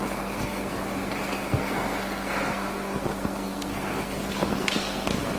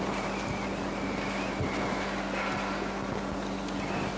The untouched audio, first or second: second